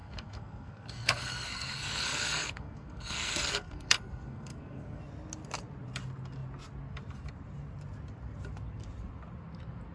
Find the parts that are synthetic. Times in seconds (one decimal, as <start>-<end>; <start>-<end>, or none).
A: 0.0-5.0